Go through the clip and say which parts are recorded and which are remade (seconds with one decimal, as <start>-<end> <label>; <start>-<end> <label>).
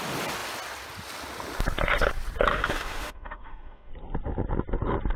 0.0-2.5 recorded; 2.5-3.9 remade; 3.9-5.2 recorded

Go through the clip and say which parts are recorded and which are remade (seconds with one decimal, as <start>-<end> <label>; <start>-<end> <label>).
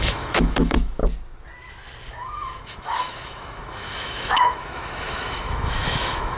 0.0-1.0 remade; 1.0-2.1 recorded; 2.1-6.4 remade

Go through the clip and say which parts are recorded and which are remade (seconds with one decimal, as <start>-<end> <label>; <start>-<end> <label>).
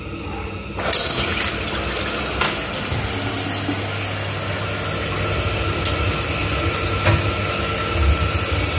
0.0-8.8 recorded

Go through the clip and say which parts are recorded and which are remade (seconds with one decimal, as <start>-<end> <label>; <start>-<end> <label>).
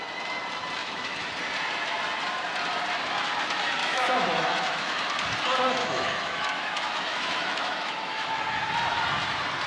0.0-0.8 recorded; 0.8-1.3 remade; 1.3-3.8 recorded; 3.8-5.0 remade; 5.0-5.8 recorded; 5.8-8.4 remade; 8.4-9.7 recorded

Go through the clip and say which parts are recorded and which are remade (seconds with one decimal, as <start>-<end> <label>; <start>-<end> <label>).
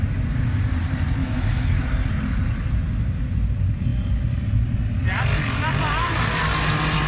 0.0-1.2 recorded; 1.2-1.8 remade; 1.8-7.1 recorded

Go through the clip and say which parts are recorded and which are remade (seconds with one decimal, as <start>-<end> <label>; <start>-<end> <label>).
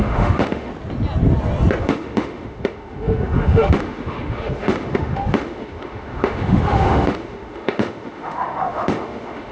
0.0-0.7 remade; 0.7-1.8 recorded; 1.8-9.5 remade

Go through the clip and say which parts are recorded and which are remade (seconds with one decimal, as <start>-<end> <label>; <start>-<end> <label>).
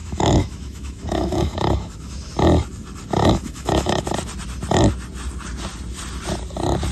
0.0-2.3 remade; 2.3-3.2 recorded; 3.2-4.0 remade; 4.0-6.9 recorded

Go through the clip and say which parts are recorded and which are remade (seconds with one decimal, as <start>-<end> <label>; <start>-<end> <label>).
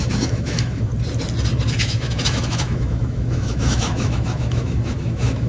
0.0-0.9 remade; 0.9-1.8 recorded; 1.8-5.5 remade